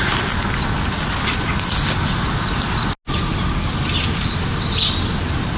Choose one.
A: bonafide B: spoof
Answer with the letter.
A